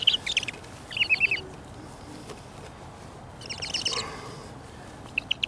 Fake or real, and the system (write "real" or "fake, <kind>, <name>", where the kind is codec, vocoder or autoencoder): real